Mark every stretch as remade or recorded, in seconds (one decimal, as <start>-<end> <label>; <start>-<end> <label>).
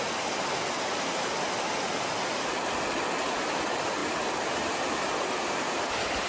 0.0-6.3 recorded